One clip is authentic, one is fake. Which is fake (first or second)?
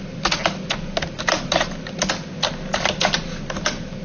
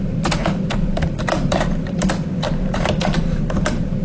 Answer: second